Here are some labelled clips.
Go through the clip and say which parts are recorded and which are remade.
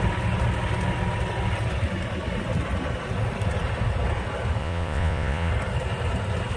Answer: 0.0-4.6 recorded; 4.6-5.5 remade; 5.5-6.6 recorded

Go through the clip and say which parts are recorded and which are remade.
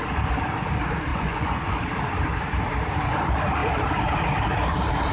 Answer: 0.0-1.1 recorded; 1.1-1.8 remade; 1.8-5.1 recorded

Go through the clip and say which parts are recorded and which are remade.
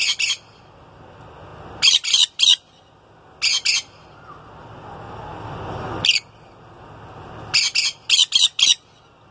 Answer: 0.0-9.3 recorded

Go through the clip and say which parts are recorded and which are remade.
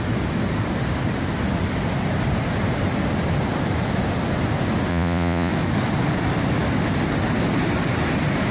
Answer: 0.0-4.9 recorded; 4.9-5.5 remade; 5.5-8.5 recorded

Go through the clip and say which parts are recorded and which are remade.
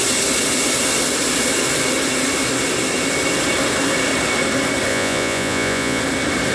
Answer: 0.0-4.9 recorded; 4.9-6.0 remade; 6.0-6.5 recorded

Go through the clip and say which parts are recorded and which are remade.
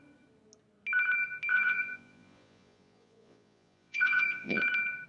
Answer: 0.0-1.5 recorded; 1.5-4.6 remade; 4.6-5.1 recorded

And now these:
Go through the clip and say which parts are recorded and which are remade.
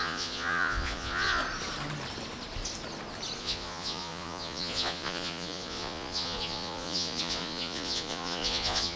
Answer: 0.0-1.4 remade; 1.4-3.4 recorded; 3.4-9.0 remade